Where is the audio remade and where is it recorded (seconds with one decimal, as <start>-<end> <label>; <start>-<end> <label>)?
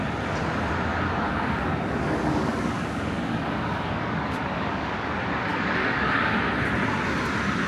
0.0-0.9 recorded; 0.9-5.1 remade; 5.1-5.5 recorded; 5.5-6.3 remade; 6.3-7.7 recorded